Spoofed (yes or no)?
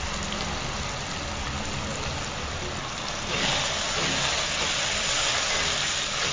no